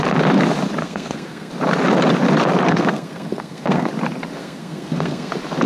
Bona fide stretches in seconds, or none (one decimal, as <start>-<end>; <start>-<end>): 0.0-0.8; 1.5-2.7; 3.9-4.4; 5.3-5.7